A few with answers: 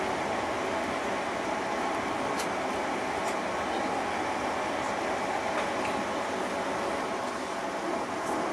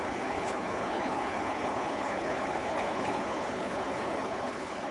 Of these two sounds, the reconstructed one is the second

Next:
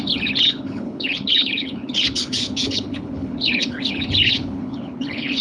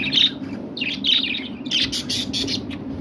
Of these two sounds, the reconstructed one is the first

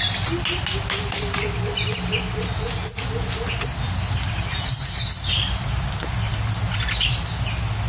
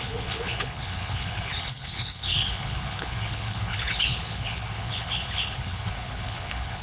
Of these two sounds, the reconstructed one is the second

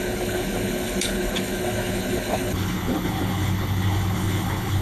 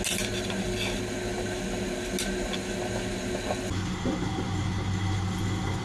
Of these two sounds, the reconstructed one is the first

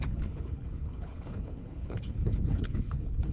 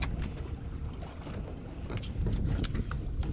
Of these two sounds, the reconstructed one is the first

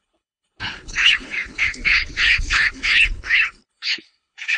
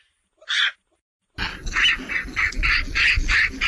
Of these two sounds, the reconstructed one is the first